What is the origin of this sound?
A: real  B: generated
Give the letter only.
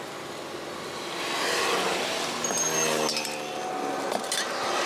A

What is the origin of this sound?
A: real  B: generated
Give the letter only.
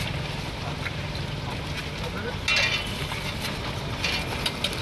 A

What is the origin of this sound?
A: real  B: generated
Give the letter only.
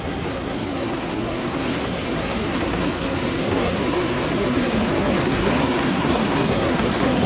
B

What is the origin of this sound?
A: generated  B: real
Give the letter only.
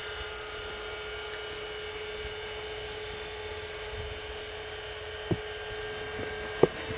B